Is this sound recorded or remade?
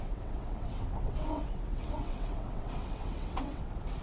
remade